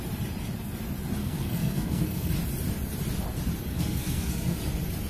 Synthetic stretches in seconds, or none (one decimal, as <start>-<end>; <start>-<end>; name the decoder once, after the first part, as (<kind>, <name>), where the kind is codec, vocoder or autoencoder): 1.2-2.3 (codec, SNAC); 3.7-4.6